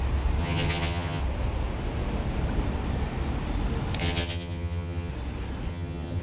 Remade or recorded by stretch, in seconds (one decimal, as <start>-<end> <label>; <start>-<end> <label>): 0.0-0.4 recorded; 0.4-1.2 remade; 1.2-4.0 recorded; 4.0-5.1 remade; 5.1-5.7 recorded; 5.7-6.2 remade